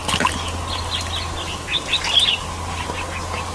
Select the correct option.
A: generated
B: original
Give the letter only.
B